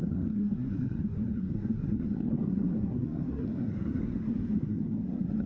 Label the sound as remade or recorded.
remade